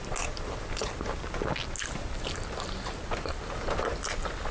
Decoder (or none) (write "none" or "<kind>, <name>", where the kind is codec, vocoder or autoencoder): none